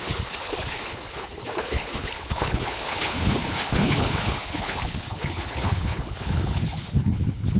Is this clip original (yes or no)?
no